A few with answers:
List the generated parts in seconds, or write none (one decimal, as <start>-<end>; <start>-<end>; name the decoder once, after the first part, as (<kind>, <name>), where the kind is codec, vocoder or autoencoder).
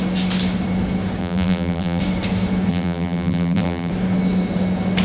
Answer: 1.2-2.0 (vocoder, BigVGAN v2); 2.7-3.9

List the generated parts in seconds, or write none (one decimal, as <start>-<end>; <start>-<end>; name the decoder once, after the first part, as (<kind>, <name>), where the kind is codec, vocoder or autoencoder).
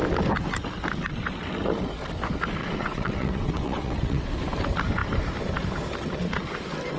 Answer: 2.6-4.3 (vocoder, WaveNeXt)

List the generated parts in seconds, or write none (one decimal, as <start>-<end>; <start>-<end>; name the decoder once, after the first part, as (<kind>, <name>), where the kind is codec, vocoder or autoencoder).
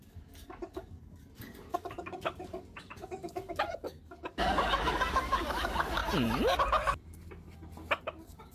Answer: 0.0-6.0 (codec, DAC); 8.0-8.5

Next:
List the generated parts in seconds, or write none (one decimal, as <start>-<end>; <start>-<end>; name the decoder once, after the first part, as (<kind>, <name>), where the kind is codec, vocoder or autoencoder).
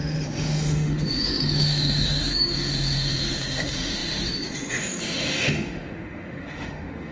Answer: 0.0-7.1 (autoencoder, DAC-VAE)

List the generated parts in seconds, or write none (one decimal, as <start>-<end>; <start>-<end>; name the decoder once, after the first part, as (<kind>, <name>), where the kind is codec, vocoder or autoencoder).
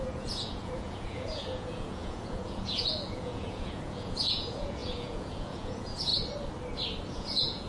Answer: 0.0-6.1 (vocoder, Vocos); 7.1-7.7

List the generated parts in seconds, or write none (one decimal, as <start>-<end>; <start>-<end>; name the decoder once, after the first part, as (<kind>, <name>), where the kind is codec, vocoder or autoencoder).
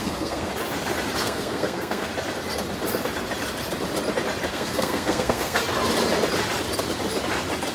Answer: 0.0-0.5 (codec, SNAC); 1.2-2.1; 4.5-5.6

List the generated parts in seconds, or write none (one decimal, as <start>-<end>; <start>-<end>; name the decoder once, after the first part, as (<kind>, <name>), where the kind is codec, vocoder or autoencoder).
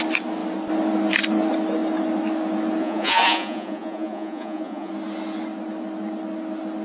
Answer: 2.8-4.9 (vocoder, Vocos)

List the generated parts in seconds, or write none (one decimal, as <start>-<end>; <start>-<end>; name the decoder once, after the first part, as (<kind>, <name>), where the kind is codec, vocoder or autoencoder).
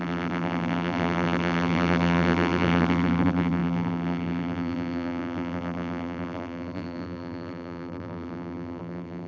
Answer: 0.0-9.3 (vocoder, BigVGAN v2)